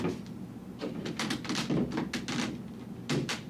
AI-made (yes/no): no